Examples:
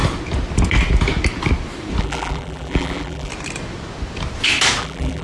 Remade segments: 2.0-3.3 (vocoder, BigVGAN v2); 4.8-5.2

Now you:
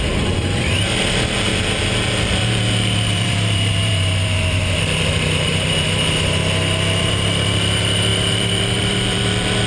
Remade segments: 0.0-1.5 (vocoder, BigVGAN v2); 2.2-6.4; 7.0-9.7

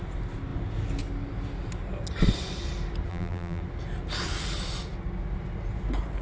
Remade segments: 3.1-3.6 (vocoder, BigVGAN v2)

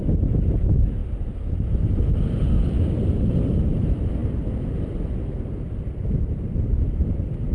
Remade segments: none

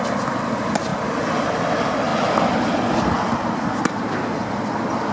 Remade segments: 0.9-1.5 (vocoder, BigVGAN v2)

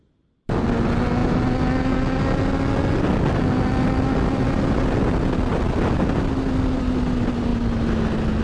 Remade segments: none

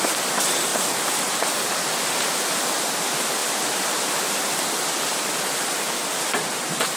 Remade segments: 0.7-1.8 (vocoder, BigVGAN v2)

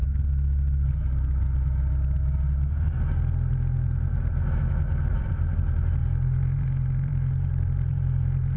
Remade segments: 5.1-8.6 (vocoder, BigVGAN v2)